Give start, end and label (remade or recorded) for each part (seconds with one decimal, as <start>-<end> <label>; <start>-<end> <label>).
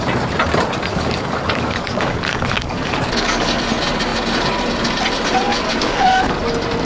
0.0-0.9 recorded; 0.9-3.6 remade; 3.6-5.5 recorded; 5.5-6.3 remade; 6.3-6.9 recorded